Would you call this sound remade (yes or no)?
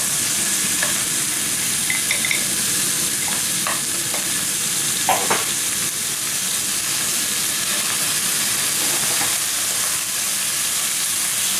no